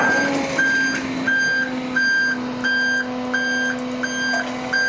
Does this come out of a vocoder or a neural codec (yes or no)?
no